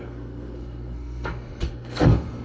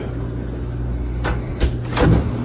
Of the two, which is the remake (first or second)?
first